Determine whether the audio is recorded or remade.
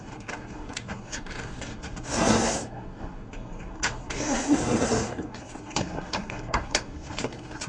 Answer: remade